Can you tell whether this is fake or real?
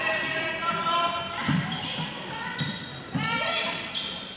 real